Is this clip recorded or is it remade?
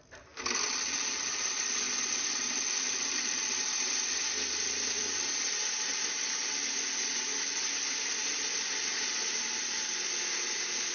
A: recorded